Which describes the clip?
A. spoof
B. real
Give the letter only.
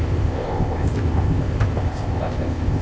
A